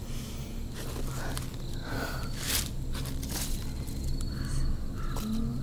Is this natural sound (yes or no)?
yes